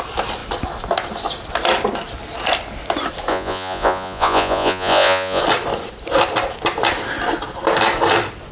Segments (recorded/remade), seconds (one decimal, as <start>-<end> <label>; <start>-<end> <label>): 0.0-3.3 recorded; 3.3-5.4 remade; 5.4-8.5 recorded